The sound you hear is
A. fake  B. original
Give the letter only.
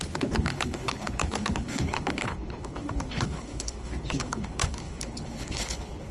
A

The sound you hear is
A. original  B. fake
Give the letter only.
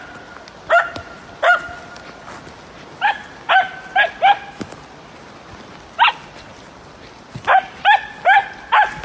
A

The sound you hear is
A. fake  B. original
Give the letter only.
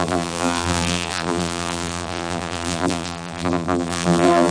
A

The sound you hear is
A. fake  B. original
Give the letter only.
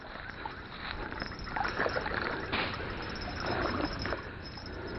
B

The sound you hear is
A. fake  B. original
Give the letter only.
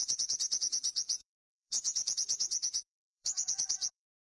A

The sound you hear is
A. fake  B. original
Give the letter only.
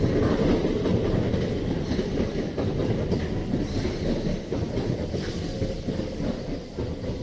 B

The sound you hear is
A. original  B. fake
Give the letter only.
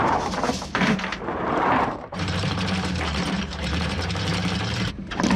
B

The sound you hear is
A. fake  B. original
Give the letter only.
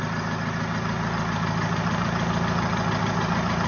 B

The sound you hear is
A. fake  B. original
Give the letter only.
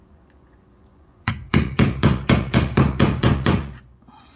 A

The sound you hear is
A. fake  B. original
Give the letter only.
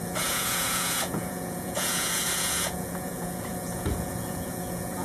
A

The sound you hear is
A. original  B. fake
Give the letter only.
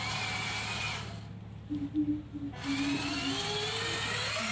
A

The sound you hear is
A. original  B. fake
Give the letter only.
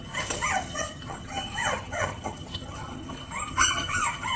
B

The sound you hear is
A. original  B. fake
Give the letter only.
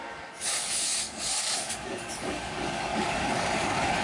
B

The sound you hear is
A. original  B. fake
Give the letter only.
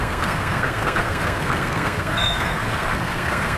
B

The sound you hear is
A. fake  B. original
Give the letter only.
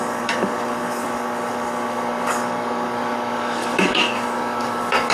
A